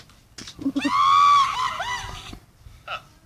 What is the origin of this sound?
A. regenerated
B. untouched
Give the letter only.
B